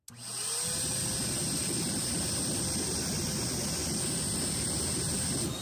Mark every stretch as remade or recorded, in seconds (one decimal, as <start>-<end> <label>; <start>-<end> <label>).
0.0-5.6 recorded